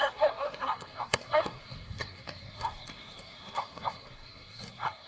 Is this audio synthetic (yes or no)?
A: yes